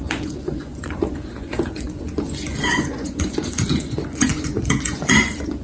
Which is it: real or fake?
fake